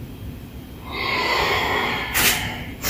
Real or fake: real